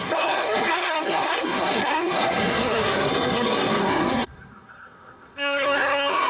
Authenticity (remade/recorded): remade